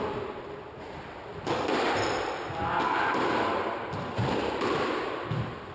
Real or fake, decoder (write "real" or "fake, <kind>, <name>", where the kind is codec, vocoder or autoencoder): fake, vocoder, BigVGAN v2